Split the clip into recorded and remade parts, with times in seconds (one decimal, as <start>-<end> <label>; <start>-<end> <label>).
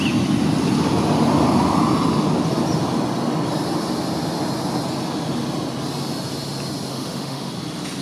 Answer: 0.0-6.9 recorded; 6.9-7.5 remade; 7.5-8.0 recorded